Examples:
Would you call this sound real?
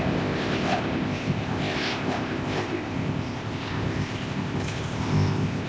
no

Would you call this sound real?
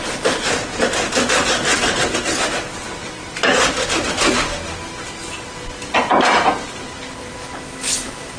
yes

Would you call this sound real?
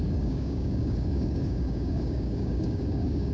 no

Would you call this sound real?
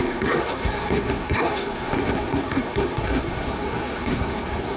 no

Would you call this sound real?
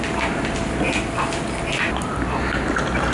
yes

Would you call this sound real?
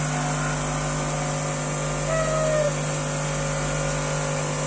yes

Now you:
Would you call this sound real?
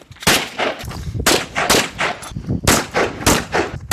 yes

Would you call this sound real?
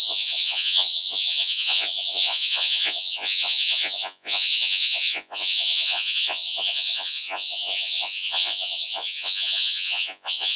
no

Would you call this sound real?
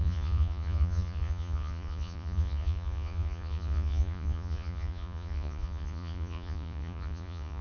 no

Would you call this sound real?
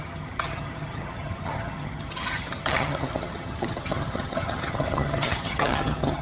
no